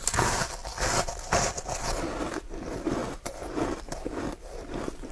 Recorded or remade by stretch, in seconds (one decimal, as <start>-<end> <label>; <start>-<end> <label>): 0.0-0.6 remade; 0.6-2.4 recorded; 2.4-3.0 remade; 3.0-4.6 recorded; 4.6-5.1 remade

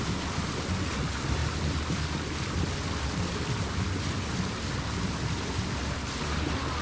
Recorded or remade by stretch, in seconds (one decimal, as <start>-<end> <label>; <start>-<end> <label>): 0.0-6.8 recorded

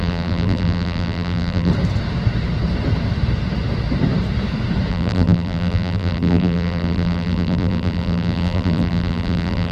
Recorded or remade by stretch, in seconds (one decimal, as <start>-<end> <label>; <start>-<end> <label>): 0.0-1.7 remade; 1.7-4.9 recorded; 4.9-9.7 remade

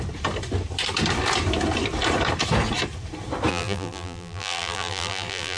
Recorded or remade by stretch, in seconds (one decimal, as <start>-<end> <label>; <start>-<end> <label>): 0.0-3.5 recorded; 3.5-5.6 remade

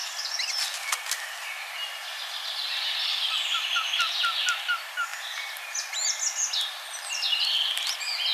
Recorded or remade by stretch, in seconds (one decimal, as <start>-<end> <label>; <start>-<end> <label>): 0.0-5.1 recorded; 5.1-5.9 remade; 5.9-8.3 recorded

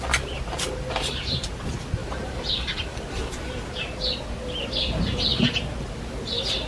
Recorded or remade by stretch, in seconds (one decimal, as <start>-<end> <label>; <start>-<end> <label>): 0.0-2.0 recorded; 2.0-2.5 remade; 2.5-6.7 recorded

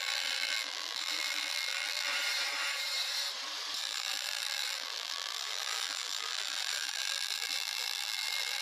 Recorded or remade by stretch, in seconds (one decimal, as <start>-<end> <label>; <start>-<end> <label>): 0.0-2.1 remade; 2.1-3.8 recorded; 3.8-8.6 remade